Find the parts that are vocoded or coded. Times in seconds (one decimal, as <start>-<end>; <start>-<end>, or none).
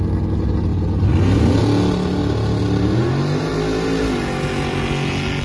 none